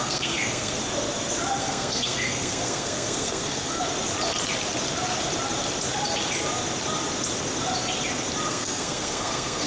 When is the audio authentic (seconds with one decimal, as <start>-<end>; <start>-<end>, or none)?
0.8-1.6; 3.8-8.5